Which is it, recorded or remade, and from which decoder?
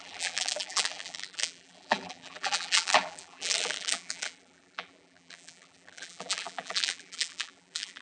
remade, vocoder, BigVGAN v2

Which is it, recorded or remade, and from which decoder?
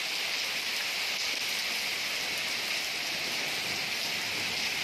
recorded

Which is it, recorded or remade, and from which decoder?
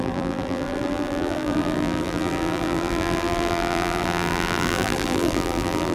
remade, vocoder, BigVGAN v2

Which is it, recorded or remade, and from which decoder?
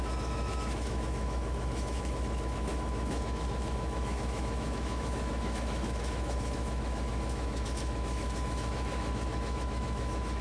remade, autoencoder, DAC-VAE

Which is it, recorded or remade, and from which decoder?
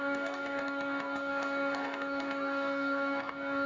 remade, codec, DAC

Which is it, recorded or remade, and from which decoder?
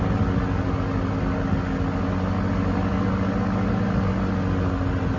recorded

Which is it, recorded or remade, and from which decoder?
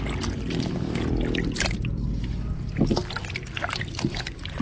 recorded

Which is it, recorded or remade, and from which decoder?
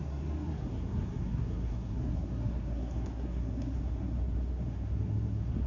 remade, codec, SNAC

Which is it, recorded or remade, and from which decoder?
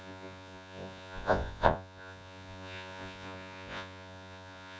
remade, vocoder, Vocos